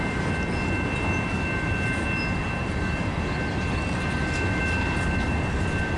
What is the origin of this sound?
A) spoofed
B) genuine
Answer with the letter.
B